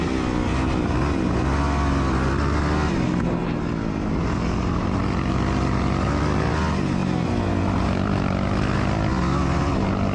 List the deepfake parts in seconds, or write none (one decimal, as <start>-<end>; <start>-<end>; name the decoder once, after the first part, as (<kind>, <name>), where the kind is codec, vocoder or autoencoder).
none